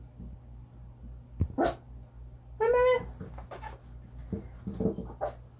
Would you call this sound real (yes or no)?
yes